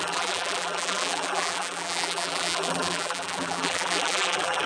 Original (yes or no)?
no